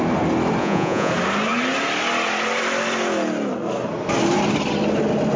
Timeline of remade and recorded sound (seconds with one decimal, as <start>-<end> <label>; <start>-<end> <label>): 0.0-0.6 recorded; 0.6-1.1 remade; 1.1-5.4 recorded